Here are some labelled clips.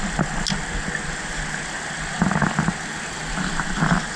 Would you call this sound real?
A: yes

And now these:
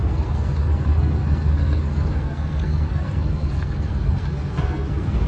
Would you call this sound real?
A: no